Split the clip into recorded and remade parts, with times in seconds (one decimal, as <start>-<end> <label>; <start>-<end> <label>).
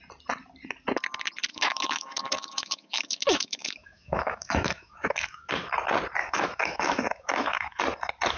0.0-1.5 recorded; 1.5-5.5 remade; 5.5-6.2 recorded; 6.2-7.8 remade; 7.8-8.4 recorded